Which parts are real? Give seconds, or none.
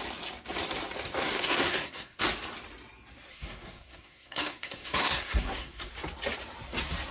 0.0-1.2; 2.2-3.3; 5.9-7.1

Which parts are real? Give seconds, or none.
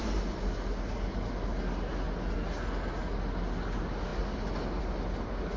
0.0-5.6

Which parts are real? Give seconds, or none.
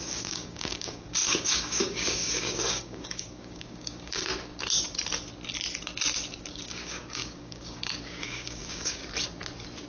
4.5-6.5; 9.0-9.9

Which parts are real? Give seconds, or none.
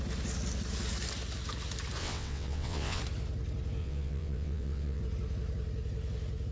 0.0-2.0; 3.0-3.8; 5.0-6.5